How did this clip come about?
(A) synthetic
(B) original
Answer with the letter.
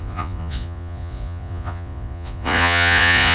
A